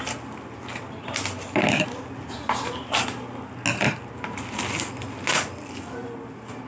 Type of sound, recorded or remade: recorded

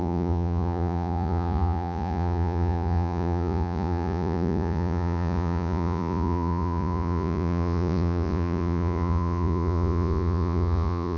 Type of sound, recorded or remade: remade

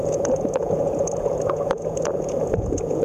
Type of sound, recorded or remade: remade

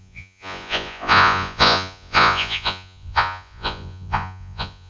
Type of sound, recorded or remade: remade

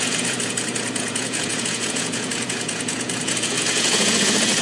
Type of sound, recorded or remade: remade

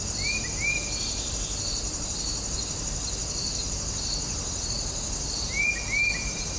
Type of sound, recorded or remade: recorded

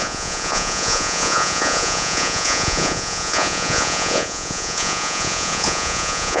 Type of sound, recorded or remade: remade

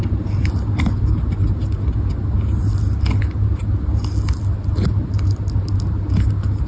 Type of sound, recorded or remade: recorded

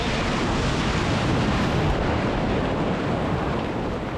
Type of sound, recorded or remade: recorded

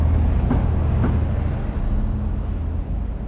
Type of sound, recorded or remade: recorded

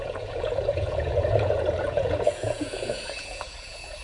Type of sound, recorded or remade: remade